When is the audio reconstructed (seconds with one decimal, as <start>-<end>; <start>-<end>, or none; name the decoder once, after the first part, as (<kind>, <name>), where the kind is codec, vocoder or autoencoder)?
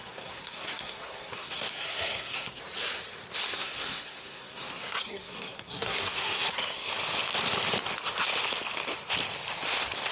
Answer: 0.0-2.6 (codec, SNAC); 3.5-6.9